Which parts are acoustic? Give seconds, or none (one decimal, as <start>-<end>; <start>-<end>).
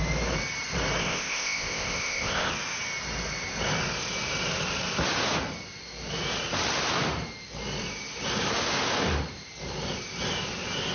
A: 0.0-1.0; 2.5-10.9